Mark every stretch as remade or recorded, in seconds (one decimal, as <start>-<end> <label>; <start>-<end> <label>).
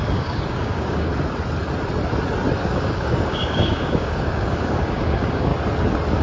0.0-1.1 remade; 1.1-2.6 recorded; 2.6-5.5 remade; 5.5-6.2 recorded